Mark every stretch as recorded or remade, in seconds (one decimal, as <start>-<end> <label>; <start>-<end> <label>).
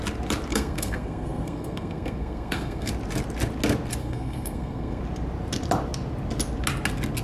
0.0-0.5 recorded; 0.5-2.9 remade; 2.9-4.0 recorded; 4.0-5.0 remade; 5.0-7.2 recorded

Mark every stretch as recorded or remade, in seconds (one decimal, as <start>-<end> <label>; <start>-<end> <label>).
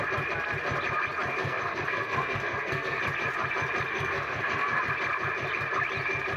0.0-1.4 recorded; 1.4-3.0 remade; 3.0-3.9 recorded; 3.9-4.8 remade; 4.8-6.4 recorded